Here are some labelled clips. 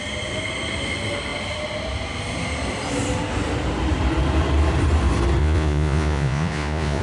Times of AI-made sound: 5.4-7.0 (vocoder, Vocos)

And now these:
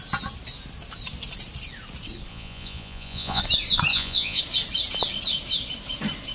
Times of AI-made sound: 2.3-3.4 (vocoder, Vocos); 3.9-4.4